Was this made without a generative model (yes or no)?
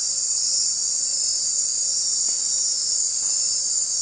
yes